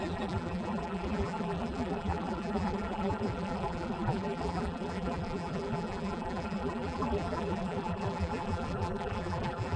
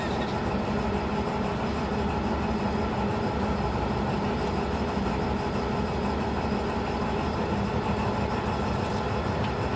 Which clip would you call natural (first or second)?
second